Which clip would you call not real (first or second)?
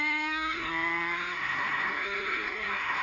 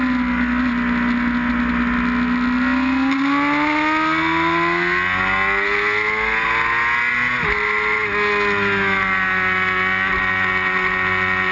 first